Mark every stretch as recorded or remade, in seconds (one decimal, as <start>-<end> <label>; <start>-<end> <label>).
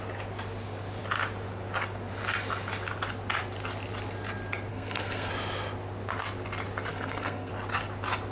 0.0-4.7 recorded; 4.7-5.3 remade; 5.3-6.9 recorded; 6.9-7.5 remade; 7.5-8.3 recorded